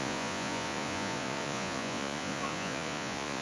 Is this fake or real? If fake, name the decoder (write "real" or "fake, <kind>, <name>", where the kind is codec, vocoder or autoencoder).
fake, vocoder, Vocos